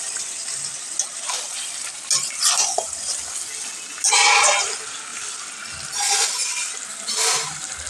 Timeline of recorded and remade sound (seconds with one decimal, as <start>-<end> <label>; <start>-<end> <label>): 0.0-7.9 recorded